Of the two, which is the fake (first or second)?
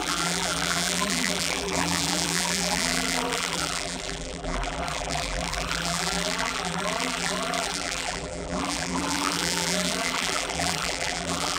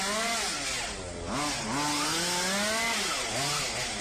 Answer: first